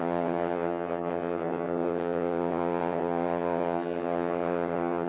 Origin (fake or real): fake